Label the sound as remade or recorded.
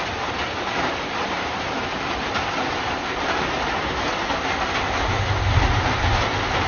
recorded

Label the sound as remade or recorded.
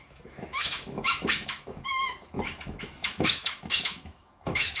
remade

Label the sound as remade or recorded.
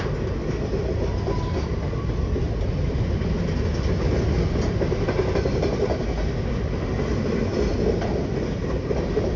recorded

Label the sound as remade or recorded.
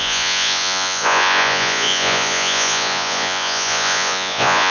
remade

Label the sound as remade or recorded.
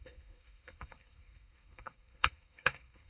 remade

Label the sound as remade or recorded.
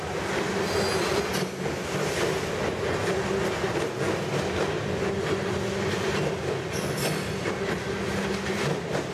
recorded